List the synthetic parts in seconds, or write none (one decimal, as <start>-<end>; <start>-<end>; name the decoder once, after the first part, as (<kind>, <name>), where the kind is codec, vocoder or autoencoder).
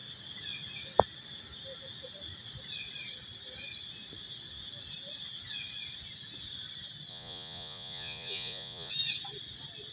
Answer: 7.1-8.9 (vocoder, Vocos)